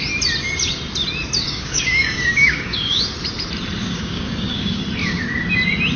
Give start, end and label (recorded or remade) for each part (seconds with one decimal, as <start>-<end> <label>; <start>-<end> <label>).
0.0-1.4 recorded; 1.4-3.0 remade; 3.0-3.8 recorded; 3.8-4.8 remade; 4.8-6.0 recorded

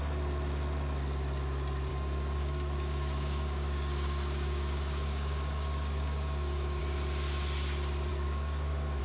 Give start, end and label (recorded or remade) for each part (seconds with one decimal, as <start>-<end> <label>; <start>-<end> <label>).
0.0-1.9 recorded; 1.9-6.8 remade; 6.8-8.1 recorded; 8.1-9.0 remade

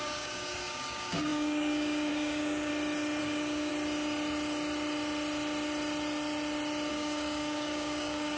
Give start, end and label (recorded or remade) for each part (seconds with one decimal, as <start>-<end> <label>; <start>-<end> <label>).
0.0-2.7 remade; 2.7-3.2 recorded; 3.2-3.7 remade; 3.7-6.9 recorded; 6.9-8.4 remade

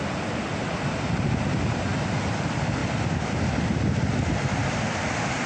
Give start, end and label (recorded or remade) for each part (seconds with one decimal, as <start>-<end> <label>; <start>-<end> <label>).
0.0-5.5 recorded

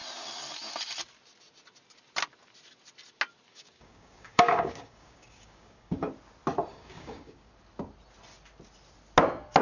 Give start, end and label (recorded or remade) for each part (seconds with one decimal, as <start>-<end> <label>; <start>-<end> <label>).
0.0-3.5 recorded; 3.5-6.1 remade; 6.1-6.7 recorded; 6.7-7.5 remade; 7.5-9.6 recorded

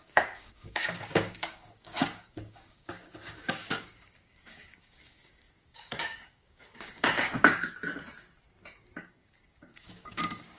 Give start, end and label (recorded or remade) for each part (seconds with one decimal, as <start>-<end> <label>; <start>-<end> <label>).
0.0-7.8 remade; 7.8-9.0 recorded; 9.0-10.6 remade

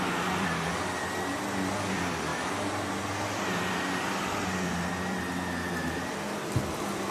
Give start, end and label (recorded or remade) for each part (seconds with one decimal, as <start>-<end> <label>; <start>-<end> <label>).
0.0-7.1 recorded